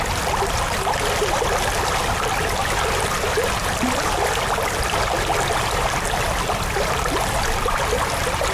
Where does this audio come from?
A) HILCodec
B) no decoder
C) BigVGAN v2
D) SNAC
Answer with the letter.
B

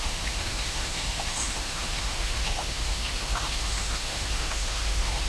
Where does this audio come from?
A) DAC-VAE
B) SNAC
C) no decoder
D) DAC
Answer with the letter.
A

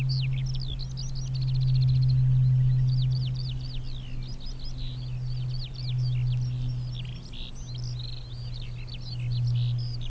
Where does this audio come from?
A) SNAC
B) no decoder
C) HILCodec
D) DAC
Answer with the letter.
B